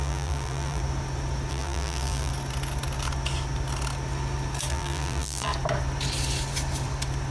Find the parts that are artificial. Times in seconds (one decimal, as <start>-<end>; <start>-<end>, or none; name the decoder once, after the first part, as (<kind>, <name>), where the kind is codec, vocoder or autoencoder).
0.0-0.8 (vocoder, BigVGAN v2); 1.5-2.3; 4.7-5.5